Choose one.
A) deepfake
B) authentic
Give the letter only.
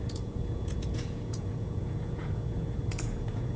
A